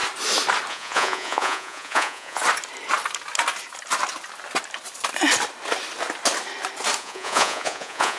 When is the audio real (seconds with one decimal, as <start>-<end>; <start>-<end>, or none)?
0.0-0.7; 2.4-7.0